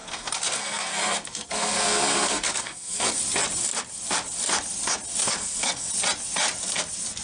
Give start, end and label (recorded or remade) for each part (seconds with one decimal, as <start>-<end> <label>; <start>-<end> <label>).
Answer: 0.0-3.2 remade; 3.2-5.2 recorded; 5.2-5.9 remade; 5.9-7.2 recorded